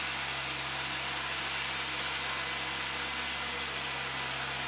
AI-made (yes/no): no